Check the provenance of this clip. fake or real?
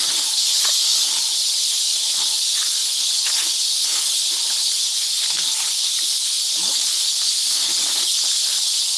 fake